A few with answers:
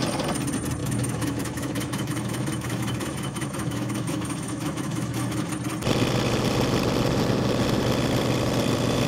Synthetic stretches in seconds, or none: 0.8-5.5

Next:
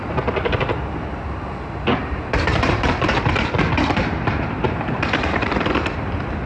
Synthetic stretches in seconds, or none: 2.0-5.9